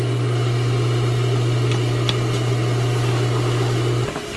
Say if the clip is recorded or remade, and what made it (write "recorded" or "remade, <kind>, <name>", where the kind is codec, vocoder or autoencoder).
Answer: recorded